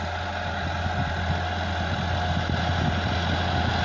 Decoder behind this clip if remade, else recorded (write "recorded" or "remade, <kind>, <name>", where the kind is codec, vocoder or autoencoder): recorded